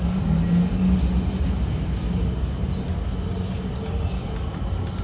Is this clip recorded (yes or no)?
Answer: yes